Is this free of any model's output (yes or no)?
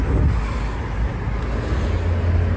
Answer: yes